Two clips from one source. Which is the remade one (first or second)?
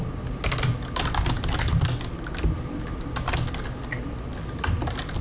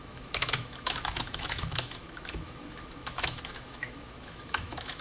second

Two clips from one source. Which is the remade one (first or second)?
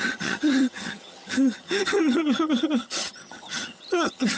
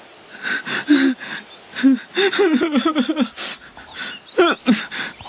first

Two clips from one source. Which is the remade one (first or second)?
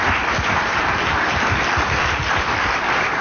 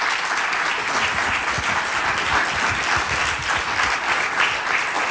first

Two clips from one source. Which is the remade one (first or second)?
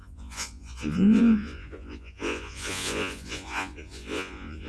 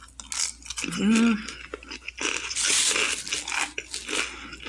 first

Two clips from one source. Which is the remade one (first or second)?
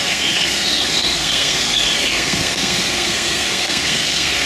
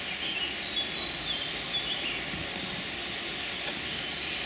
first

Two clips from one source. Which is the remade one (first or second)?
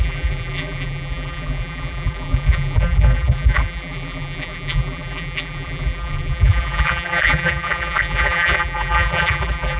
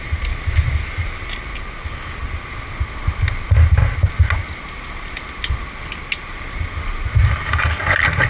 first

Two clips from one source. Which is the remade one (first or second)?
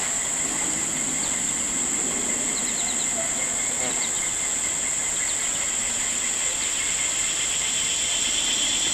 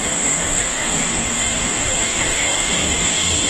second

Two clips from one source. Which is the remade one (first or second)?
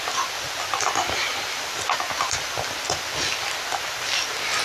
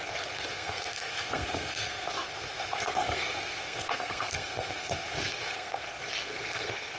second